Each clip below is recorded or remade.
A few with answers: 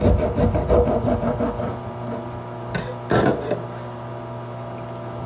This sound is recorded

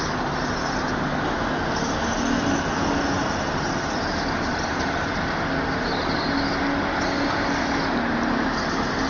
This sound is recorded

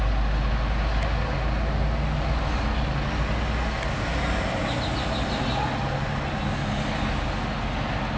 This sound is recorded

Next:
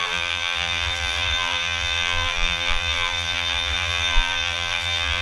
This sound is remade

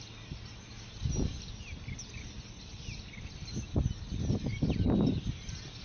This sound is recorded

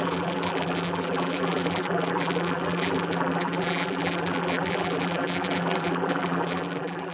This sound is remade